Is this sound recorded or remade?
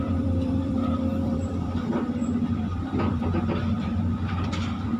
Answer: remade